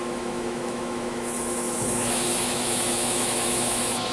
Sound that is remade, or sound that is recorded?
remade